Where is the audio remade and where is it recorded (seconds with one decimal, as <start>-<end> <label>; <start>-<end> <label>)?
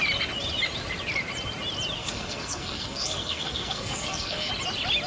0.0-2.0 recorded; 2.0-4.5 remade; 4.5-5.1 recorded